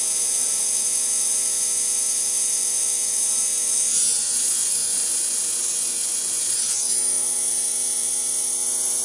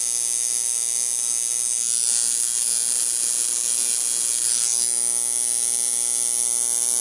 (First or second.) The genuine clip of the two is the second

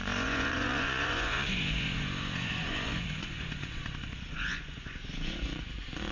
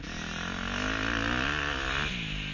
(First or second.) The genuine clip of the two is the second